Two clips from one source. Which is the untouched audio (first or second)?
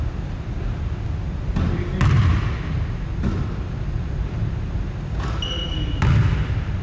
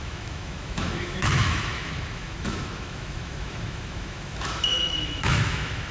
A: first